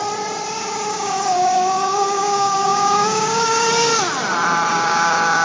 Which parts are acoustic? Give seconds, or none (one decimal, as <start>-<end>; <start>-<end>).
0.0-0.9; 3.9-4.7